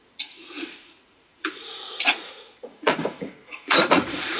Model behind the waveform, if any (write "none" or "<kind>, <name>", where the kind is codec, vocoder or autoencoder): vocoder, Vocos